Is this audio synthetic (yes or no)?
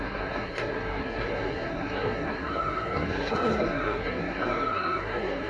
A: yes